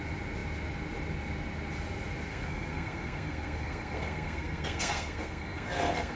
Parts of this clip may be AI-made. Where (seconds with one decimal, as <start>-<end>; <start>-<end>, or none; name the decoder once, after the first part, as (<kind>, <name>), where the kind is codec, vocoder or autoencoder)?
2.3-6.2 (codec, SNAC)